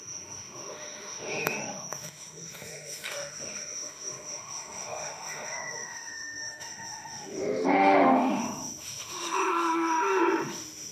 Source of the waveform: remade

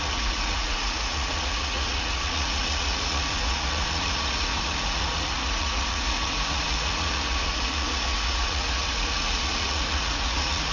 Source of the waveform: remade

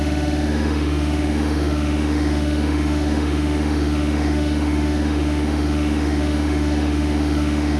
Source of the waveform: remade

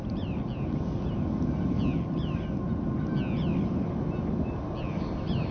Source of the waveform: recorded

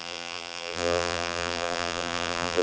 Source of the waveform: remade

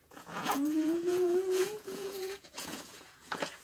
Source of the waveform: remade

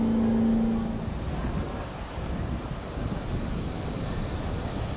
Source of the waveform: recorded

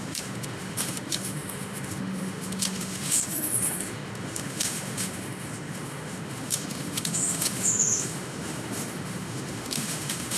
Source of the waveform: remade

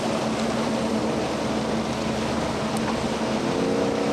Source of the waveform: recorded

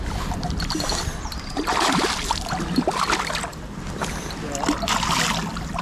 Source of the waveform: recorded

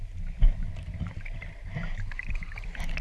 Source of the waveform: recorded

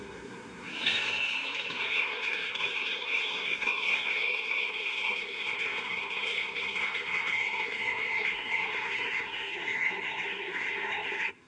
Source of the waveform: remade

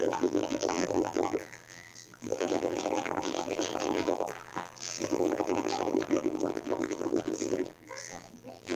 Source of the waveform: remade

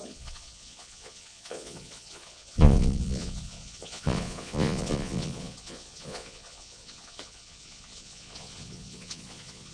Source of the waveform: remade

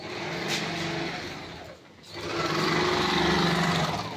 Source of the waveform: recorded